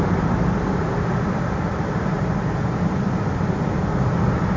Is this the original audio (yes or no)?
yes